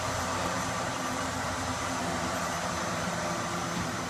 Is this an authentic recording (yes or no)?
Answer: no